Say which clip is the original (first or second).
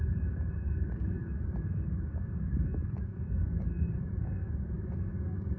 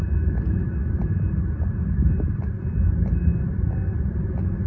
second